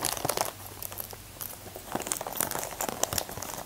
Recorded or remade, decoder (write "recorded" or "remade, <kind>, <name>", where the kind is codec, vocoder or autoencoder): recorded